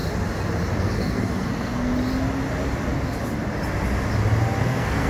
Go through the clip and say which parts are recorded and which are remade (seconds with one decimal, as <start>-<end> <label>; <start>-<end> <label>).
0.0-0.8 recorded; 0.8-1.9 remade; 1.9-4.6 recorded; 4.6-5.1 remade